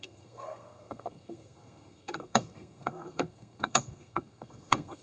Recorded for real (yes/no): no